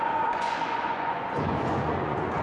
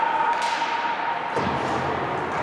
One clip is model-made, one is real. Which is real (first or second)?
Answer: second